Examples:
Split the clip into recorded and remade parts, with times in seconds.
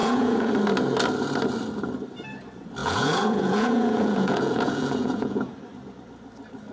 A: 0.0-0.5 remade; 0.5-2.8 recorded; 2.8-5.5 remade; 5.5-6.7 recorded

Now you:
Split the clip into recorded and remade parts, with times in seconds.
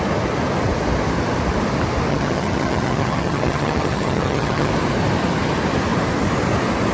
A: 0.0-2.1 recorded; 2.1-4.7 remade; 4.7-6.9 recorded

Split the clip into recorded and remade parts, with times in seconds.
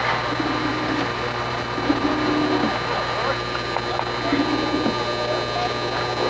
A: 0.0-0.7 recorded; 0.7-2.4 remade; 2.4-6.3 recorded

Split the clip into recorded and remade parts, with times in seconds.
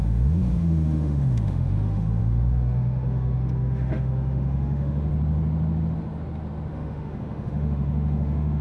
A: 0.0-5.1 remade; 5.1-6.7 recorded; 6.7-8.6 remade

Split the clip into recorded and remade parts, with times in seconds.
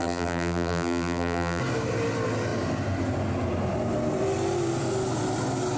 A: 0.0-1.6 remade; 1.6-5.8 recorded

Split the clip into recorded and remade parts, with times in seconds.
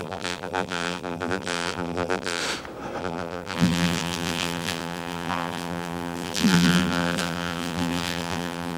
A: 0.0-2.4 remade; 2.4-3.0 recorded; 3.0-8.8 remade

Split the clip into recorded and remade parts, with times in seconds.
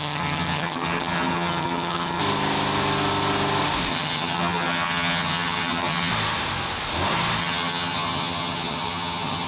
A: 0.0-2.2 remade; 2.2-3.9 recorded; 3.9-6.1 remade; 6.1-7.4 recorded; 7.4-9.5 remade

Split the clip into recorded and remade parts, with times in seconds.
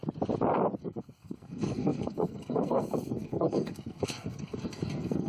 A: 0.0-0.8 recorded; 0.8-5.3 remade